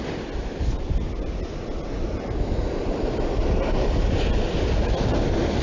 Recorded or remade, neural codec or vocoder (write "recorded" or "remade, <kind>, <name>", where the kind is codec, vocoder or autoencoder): recorded